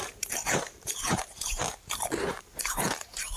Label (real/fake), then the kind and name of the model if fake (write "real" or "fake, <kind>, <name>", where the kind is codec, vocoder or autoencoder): fake, vocoder, BigVGAN v2